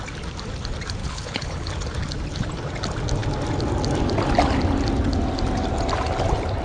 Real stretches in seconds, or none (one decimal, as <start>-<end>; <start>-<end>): 0.0-1.0; 1.7-6.6

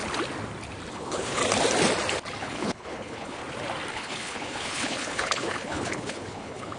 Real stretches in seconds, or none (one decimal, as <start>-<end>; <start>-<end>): 0.0-0.9; 1.4-2.4; 3.4-3.9